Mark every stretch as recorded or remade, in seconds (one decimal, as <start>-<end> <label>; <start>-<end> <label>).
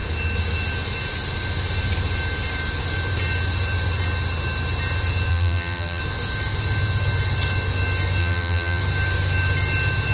0.0-5.3 recorded; 5.3-6.0 remade; 6.0-8.2 recorded; 8.2-8.8 remade; 8.8-10.1 recorded